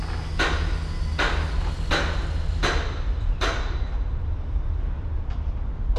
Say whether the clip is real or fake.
real